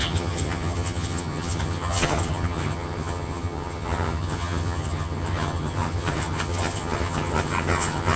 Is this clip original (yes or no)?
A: no